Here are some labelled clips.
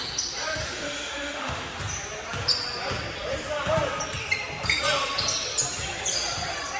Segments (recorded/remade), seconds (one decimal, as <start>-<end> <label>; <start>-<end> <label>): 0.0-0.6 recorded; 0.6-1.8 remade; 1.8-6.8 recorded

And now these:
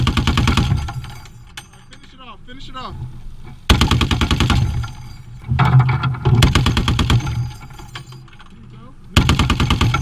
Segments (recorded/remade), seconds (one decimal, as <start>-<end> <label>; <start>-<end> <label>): 0.0-10.0 recorded

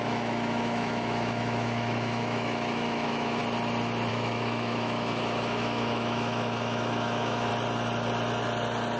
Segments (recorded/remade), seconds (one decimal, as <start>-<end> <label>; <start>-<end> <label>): 0.0-3.4 remade; 3.4-4.1 recorded; 4.1-7.5 remade; 7.5-9.0 recorded

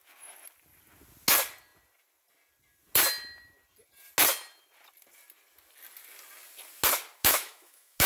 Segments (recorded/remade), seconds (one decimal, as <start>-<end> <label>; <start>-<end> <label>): 0.0-7.2 recorded; 7.2-8.1 remade